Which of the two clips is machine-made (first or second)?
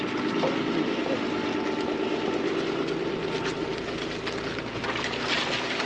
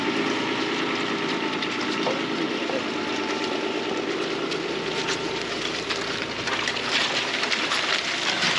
second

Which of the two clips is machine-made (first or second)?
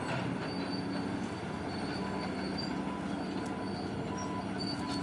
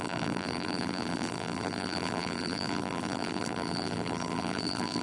second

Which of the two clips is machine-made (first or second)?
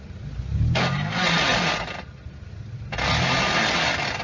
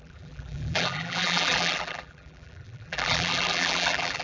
second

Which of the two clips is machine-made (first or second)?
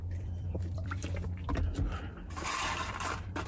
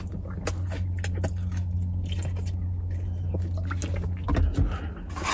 first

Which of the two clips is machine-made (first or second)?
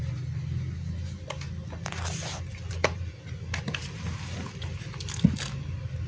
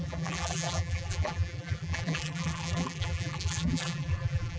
second